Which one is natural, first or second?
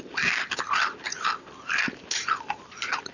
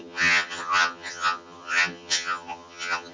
first